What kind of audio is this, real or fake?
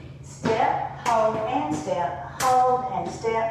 real